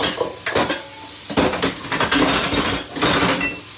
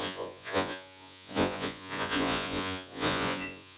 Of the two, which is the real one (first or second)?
first